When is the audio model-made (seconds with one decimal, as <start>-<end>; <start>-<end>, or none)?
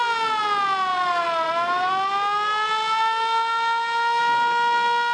0.9-1.9